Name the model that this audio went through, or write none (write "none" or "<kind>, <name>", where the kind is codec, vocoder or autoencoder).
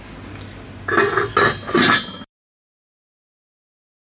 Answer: none